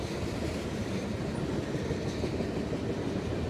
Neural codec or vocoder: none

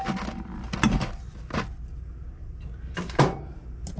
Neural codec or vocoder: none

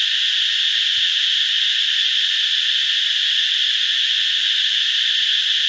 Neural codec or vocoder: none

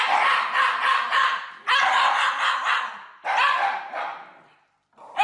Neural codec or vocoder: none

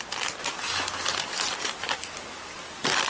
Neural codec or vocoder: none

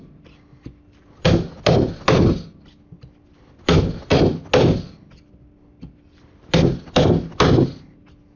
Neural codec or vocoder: none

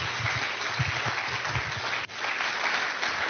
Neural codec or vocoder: none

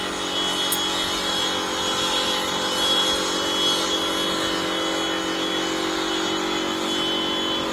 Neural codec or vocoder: none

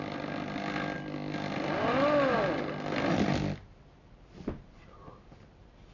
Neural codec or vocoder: none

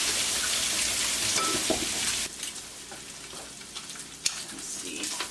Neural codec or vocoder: none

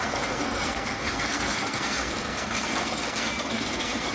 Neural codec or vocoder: codec, SNAC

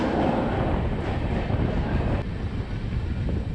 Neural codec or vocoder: none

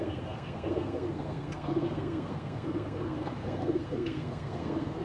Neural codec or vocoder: codec, SNAC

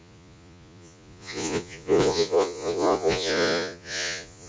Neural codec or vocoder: vocoder, Vocos